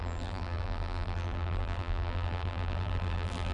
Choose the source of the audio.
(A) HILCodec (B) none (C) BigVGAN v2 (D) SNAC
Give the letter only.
C